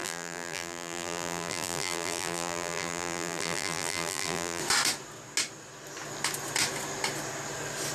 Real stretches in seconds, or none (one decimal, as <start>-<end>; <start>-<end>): 4.6-7.9